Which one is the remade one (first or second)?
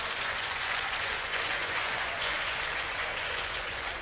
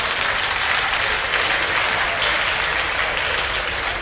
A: first